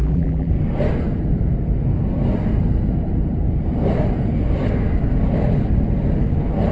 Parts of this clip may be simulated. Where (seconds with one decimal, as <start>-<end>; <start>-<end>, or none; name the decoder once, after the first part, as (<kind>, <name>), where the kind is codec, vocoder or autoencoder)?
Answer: 0.0-0.5 (vocoder, BigVGAN v2)